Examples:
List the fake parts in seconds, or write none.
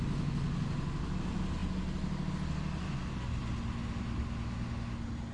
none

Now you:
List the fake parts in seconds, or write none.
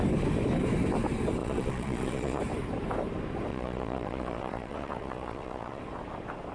1.4-2.4 (vocoder, Vocos); 3.5-5.8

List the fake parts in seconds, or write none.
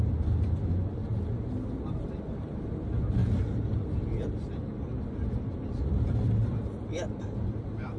3.2-8.0 (vocoder, BigVGAN v2)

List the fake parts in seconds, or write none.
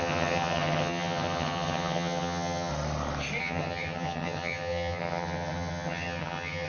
0.0-2.7 (vocoder, HiFi-GAN); 3.4-6.7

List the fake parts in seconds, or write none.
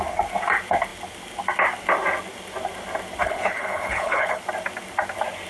3.2-4.4 (codec, HILCodec)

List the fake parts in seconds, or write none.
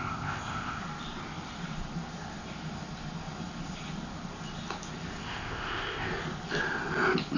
0.0-0.8 (codec, ZipCodec); 5.2-6.1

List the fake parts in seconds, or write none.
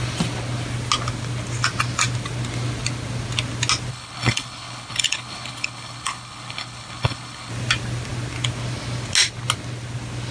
3.9-7.5 (codec, HILCodec)